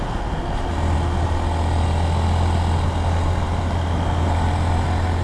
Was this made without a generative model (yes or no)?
yes